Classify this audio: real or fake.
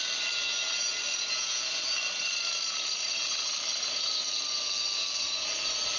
real